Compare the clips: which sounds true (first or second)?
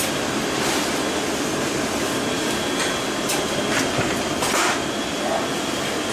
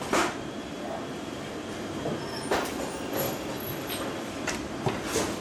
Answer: first